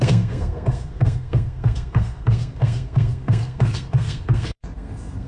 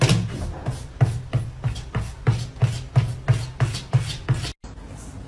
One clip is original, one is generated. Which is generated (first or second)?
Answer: first